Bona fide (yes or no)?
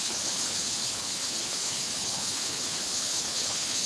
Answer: no